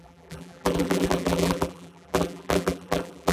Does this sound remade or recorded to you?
remade